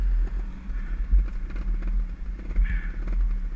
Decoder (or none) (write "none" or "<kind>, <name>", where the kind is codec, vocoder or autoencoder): none